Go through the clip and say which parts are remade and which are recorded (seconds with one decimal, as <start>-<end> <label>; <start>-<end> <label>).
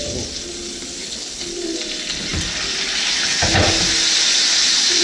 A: 0.0-1.0 recorded; 1.0-1.5 remade; 1.5-5.0 recorded